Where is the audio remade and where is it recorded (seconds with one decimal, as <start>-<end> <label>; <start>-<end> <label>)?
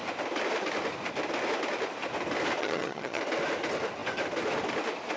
0.0-2.6 recorded; 2.6-3.2 remade; 3.2-5.2 recorded